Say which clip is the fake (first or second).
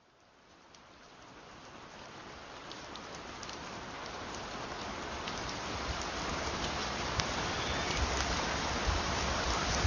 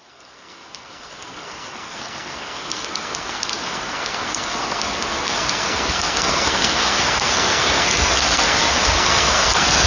second